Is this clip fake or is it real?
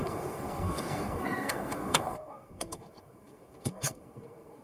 fake